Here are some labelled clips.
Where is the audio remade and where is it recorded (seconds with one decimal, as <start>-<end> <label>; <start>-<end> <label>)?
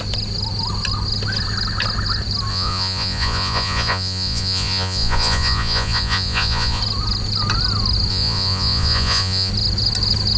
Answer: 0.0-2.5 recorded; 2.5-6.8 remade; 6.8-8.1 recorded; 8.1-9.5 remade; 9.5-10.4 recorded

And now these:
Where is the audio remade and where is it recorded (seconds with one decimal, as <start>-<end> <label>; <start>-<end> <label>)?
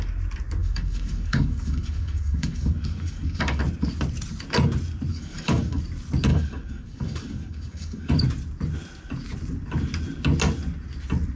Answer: 0.0-0.6 recorded; 0.6-3.6 remade; 3.6-5.1 recorded; 5.1-5.8 remade; 5.8-6.3 recorded; 6.3-8.1 remade; 8.1-11.4 recorded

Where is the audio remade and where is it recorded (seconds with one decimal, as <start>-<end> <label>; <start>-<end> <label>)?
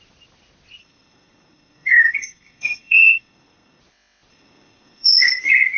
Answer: 0.0-0.8 recorded; 0.8-3.8 remade; 3.8-4.3 recorded; 4.3-5.1 remade; 5.1-5.8 recorded